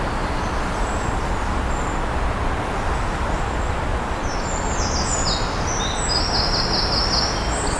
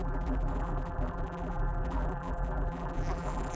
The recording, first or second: first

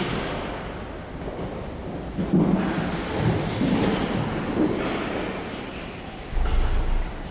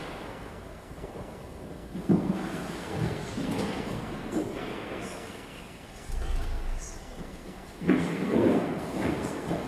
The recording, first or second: first